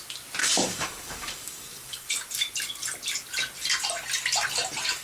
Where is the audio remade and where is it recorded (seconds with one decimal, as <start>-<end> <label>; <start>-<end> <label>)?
0.0-0.4 recorded; 0.4-2.1 remade; 2.1-5.0 recorded